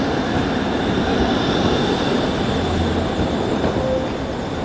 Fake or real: real